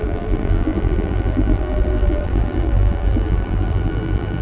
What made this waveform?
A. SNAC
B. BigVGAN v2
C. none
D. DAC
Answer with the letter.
B